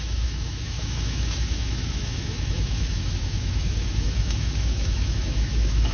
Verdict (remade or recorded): remade